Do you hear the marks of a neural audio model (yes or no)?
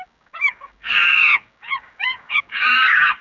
yes